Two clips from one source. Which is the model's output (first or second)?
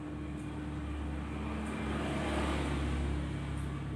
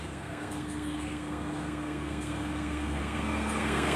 second